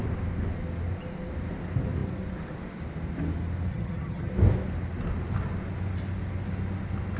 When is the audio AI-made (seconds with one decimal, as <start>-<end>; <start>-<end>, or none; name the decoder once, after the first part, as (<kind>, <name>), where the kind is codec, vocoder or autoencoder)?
3.7-4.3 (vocoder, HiFi-GAN)